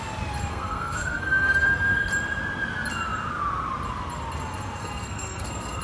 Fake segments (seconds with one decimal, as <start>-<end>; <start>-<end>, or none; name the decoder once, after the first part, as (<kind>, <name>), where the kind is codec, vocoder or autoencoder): 0.5-2.1 (codec, SNAC); 4.8-5.8